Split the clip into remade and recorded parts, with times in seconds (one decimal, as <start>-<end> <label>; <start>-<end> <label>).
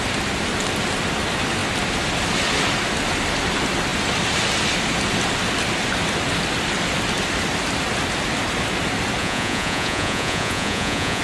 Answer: 0.0-9.2 recorded; 9.2-11.2 remade